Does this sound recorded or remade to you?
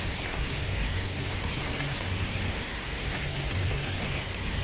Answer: remade